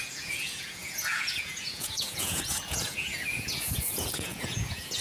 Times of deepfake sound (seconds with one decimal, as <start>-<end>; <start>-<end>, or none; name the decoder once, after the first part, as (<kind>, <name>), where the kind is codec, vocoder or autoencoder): 0.0-5.0 (vocoder, Vocos)